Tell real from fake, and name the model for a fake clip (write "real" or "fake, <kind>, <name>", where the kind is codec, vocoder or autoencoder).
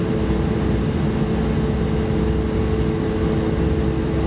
real